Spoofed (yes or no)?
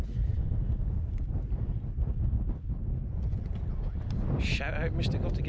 no